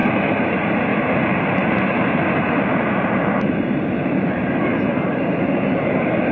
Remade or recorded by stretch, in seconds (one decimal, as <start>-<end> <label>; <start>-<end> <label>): 0.0-6.3 remade